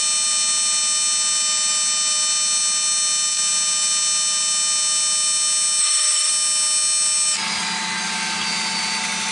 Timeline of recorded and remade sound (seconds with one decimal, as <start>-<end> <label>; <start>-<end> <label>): 0.0-5.8 recorded; 5.8-6.3 remade; 6.3-9.3 recorded